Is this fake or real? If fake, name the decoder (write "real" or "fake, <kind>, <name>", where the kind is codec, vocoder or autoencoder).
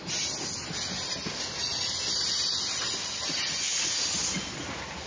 real